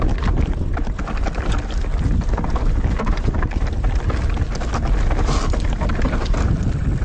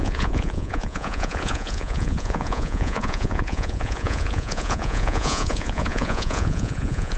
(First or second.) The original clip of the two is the first